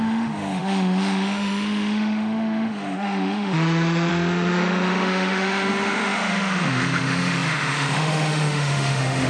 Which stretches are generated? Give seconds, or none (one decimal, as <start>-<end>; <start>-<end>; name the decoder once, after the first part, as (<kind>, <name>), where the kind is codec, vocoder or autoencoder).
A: 0.0-9.3 (autoencoder, DAC-VAE)